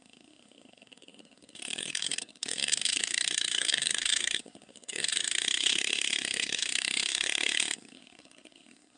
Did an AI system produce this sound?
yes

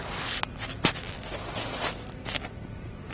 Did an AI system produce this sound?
no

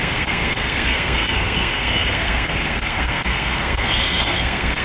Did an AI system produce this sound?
yes